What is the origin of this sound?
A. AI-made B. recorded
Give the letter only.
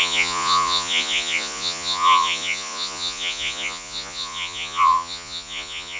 A